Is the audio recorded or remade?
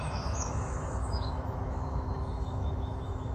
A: remade